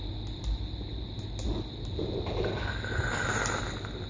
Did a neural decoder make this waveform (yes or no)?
no